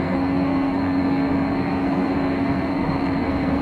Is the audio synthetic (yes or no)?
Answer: yes